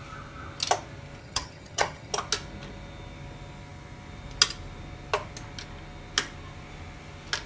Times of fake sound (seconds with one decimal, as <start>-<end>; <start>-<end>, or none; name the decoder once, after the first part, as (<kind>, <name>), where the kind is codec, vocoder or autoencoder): 1.2-2.1 (vocoder, HiFi-GAN)